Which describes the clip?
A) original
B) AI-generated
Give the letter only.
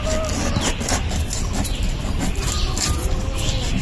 A